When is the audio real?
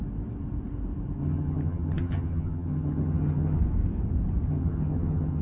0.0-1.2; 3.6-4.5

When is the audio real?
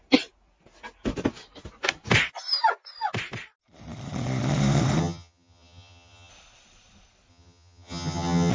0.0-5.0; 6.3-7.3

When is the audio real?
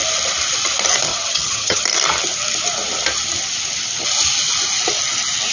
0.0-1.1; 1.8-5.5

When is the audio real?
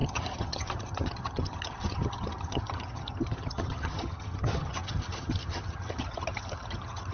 none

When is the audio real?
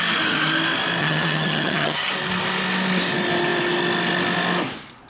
0.0-1.0; 2.1-5.1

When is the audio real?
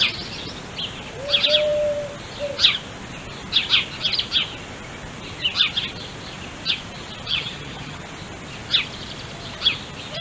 0.0-7.3; 8.0-10.2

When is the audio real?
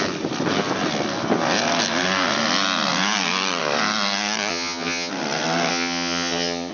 0.0-4.5; 5.1-5.7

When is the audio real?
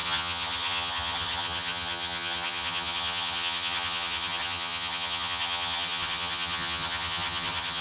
none